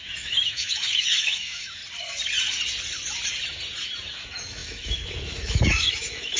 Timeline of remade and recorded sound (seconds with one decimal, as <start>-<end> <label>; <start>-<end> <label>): 0.0-1.8 remade; 1.8-4.1 recorded; 4.1-6.4 remade